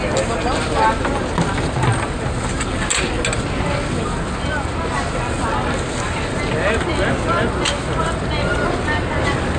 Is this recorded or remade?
recorded